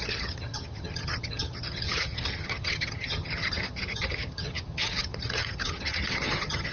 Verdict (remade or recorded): remade